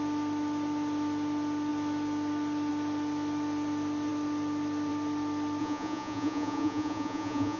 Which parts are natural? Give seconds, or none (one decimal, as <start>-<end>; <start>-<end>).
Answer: 0.0-5.6